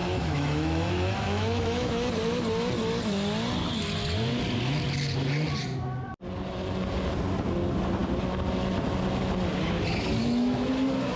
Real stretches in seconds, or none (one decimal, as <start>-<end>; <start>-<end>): 2.1-10.2; 10.7-11.2